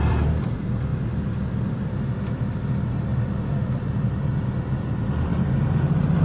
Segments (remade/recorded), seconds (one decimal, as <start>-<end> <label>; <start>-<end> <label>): 0.0-6.2 remade